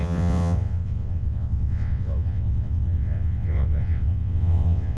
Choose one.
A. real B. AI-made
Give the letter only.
B